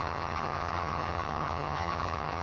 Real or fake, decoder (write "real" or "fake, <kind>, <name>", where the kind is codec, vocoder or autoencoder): fake, vocoder, HiFi-GAN